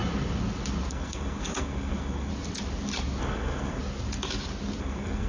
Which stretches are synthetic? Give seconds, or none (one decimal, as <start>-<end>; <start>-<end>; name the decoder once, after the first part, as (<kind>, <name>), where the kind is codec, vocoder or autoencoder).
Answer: 0.9-2.3 (codec, SNAC); 3.2-3.8; 4.8-5.3